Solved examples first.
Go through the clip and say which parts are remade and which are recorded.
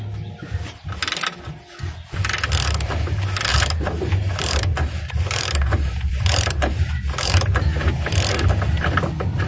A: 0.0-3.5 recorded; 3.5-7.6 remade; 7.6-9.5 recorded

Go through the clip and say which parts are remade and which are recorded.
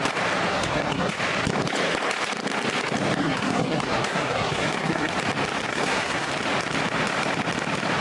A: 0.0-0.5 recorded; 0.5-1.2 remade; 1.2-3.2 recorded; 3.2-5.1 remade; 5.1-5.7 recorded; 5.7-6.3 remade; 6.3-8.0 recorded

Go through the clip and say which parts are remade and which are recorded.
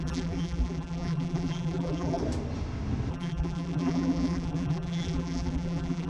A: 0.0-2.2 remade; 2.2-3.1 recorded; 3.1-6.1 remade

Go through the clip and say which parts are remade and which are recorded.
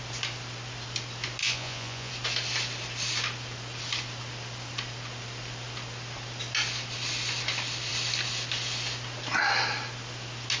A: 0.0-1.4 recorded; 1.4-2.1 remade; 2.1-10.6 recorded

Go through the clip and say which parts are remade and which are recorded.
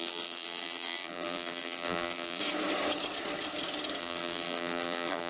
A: 0.0-2.4 remade; 2.4-4.0 recorded; 4.0-5.3 remade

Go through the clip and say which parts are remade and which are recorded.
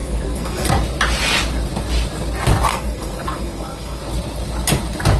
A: 0.0-0.7 remade; 0.7-2.7 recorded; 2.7-4.0 remade; 4.0-5.2 recorded